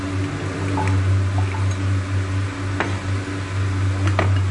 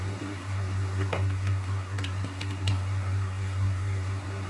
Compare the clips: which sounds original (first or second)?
first